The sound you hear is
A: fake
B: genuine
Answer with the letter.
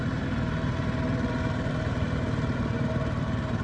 A